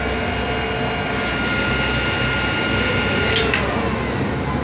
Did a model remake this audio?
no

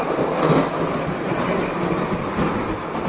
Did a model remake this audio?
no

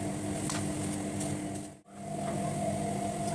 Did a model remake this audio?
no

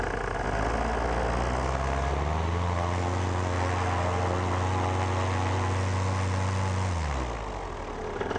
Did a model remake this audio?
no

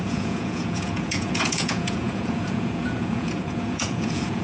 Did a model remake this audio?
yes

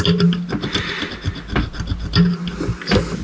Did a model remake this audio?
no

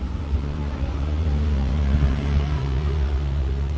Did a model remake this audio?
yes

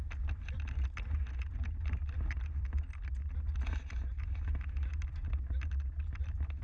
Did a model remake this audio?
no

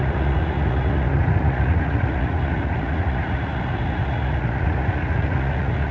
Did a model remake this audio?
yes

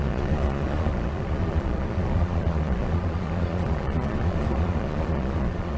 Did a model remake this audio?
yes